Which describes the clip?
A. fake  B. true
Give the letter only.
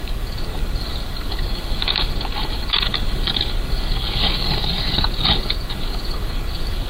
A